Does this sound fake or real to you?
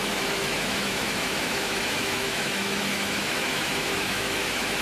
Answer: fake